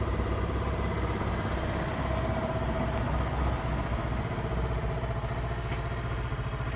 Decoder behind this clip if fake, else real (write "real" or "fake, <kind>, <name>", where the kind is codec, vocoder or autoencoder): real